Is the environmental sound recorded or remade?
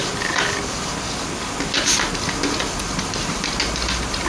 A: recorded